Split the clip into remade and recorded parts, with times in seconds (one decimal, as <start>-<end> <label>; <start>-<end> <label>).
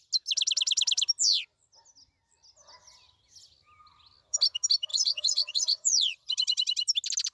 0.0-4.9 recorded; 4.9-6.3 remade; 6.3-7.3 recorded